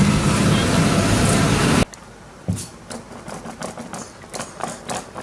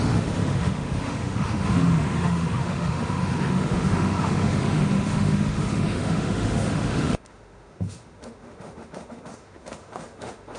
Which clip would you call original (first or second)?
first